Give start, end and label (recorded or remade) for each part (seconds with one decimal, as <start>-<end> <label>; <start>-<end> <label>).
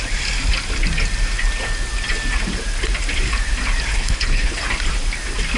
0.0-3.9 recorded; 3.9-4.6 remade; 4.6-5.6 recorded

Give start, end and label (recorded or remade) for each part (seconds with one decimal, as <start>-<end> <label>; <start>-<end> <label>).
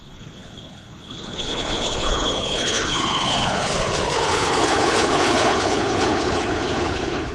0.0-7.3 remade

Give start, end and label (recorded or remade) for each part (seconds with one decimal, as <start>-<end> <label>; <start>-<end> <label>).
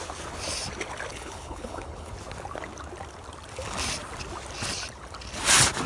0.0-1.1 recorded; 1.1-2.1 remade; 2.1-5.9 recorded